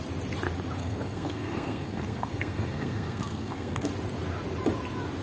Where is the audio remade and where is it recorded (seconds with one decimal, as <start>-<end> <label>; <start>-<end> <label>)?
0.0-0.8 recorded; 0.8-3.9 remade; 3.9-5.2 recorded

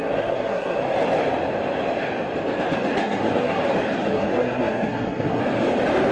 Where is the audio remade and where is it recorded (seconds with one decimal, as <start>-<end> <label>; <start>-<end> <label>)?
0.0-0.8 remade; 0.8-3.0 recorded; 3.0-3.6 remade; 3.6-4.0 recorded; 4.0-5.4 remade; 5.4-6.1 recorded